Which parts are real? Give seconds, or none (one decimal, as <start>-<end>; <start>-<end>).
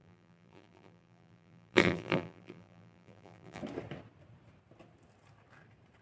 3.6-6.0